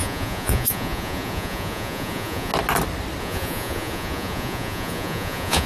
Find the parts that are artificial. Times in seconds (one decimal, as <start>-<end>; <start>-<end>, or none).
0.0-2.5; 3.2-5.7